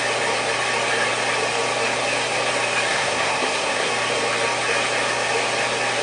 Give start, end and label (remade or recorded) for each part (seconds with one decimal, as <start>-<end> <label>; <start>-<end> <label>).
0.0-2.9 recorded; 2.9-3.9 remade; 3.9-6.0 recorded